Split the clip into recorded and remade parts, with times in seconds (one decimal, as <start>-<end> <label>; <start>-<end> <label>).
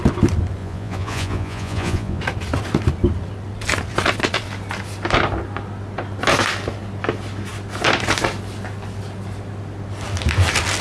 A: 0.0-0.6 recorded; 0.6-2.2 remade; 2.2-10.8 recorded